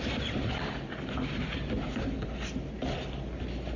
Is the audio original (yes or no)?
yes